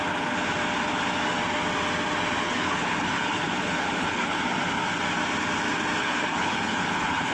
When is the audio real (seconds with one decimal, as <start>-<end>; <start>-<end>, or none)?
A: 0.0-2.4; 4.4-6.0